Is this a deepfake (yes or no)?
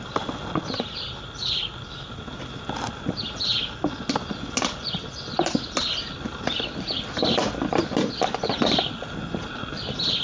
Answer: no